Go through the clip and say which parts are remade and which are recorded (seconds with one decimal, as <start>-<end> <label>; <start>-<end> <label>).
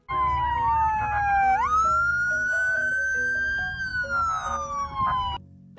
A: 0.0-2.1 recorded; 2.1-2.9 remade; 2.9-5.8 recorded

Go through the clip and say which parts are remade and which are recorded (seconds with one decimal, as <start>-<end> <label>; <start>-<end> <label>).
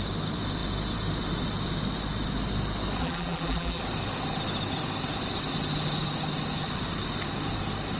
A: 0.0-3.0 recorded; 3.0-3.8 remade; 3.8-8.0 recorded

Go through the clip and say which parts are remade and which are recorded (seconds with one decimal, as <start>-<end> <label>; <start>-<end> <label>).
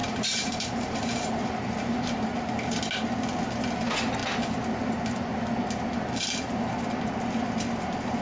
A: 0.0-1.6 remade; 1.6-8.2 recorded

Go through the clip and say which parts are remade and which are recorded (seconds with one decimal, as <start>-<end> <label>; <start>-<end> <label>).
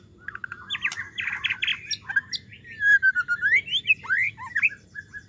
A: 0.0-5.3 recorded